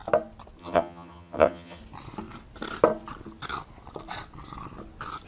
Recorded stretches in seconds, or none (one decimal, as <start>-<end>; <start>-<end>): 0.0-0.6; 1.8-5.3